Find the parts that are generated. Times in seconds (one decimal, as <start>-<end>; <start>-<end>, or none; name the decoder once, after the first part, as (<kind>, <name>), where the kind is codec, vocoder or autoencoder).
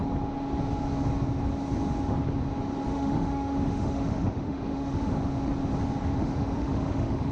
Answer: 2.9-5.5 (autoencoder, DAC-VAE); 6.2-7.3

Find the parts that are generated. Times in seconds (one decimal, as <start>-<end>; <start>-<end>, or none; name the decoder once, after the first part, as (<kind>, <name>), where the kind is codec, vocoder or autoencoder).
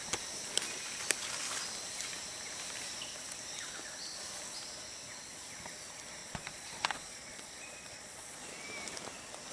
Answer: 6.2-8.5 (vocoder, Vocos)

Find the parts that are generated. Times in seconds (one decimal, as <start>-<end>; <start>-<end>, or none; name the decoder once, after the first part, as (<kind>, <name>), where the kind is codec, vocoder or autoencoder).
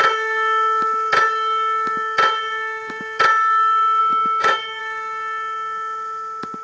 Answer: 4.0-4.8 (codec, DAC)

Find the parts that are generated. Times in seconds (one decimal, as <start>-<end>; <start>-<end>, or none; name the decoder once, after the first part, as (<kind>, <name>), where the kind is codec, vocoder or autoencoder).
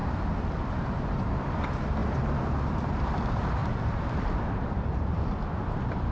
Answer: 0.7-6.1 (vocoder, BigVGAN v2)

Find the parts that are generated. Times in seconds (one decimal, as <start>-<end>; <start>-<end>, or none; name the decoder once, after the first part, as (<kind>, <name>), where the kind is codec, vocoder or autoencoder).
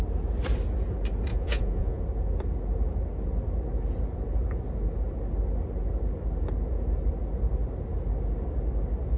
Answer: 1.3-2.0 (vocoder, Vocos)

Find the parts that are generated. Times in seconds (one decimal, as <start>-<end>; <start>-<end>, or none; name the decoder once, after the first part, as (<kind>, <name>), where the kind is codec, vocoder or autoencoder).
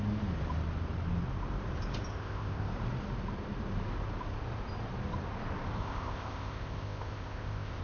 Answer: 2.1-2.7 (codec, ZipCodec); 5.8-7.8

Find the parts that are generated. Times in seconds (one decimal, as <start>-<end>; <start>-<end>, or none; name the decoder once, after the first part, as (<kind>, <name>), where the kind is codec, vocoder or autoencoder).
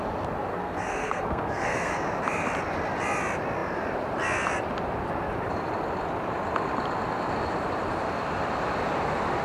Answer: 0.5-1.9 (codec, SNAC)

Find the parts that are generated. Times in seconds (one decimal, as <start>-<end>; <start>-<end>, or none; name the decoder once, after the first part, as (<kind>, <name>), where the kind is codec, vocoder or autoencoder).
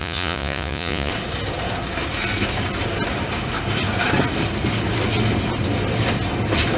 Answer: 0.0-1.1 (vocoder, Vocos)